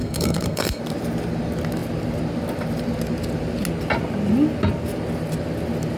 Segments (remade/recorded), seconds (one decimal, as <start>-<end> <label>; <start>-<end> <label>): 0.0-0.8 remade; 0.8-6.0 recorded